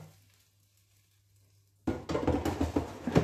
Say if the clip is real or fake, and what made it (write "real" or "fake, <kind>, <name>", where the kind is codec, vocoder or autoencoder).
real